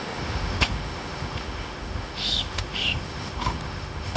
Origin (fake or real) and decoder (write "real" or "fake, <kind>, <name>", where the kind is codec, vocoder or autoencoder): fake, autoencoder, DAC-VAE